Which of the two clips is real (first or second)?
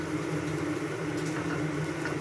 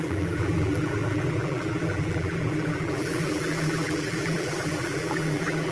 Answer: first